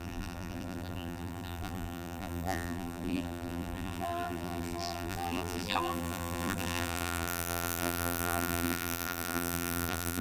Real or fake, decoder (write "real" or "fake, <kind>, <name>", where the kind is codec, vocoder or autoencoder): fake, vocoder, BigVGAN v2